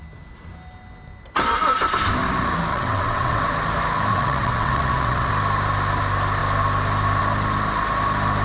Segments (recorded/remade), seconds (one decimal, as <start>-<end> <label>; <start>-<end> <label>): 0.0-2.7 recorded; 2.7-3.4 remade; 3.4-4.1 recorded; 4.1-5.3 remade; 5.3-8.4 recorded